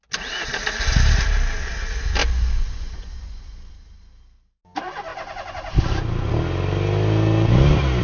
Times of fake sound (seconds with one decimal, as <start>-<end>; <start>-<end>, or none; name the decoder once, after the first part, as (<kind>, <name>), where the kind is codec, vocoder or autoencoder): 2.2-3.7 (vocoder, Vocos)